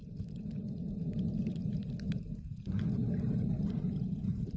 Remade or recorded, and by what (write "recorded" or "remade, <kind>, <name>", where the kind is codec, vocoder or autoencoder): remade, vocoder, BigVGAN v2